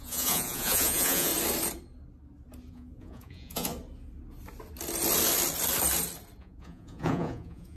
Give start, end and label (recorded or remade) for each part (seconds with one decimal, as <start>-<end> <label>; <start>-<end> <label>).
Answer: 0.0-1.3 remade; 1.3-2.7 recorded; 2.7-3.7 remade; 3.7-6.4 recorded; 6.4-7.8 remade